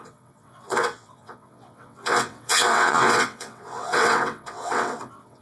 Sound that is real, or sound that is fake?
fake